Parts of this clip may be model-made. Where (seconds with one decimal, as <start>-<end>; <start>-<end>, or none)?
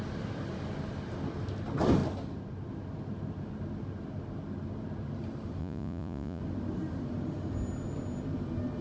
5.6-6.4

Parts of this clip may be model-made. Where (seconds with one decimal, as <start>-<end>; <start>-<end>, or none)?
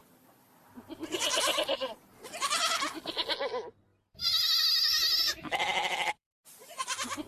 0.0-3.1; 3.9-5.2; 5.8-6.5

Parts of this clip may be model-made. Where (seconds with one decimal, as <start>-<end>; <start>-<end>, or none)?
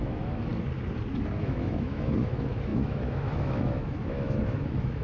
0.0-0.5; 1.4-5.0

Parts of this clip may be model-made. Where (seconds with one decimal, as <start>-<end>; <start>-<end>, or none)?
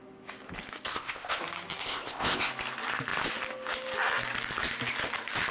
0.9-1.4; 1.8-2.5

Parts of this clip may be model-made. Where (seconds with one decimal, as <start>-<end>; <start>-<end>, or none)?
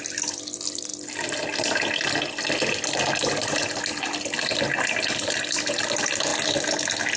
none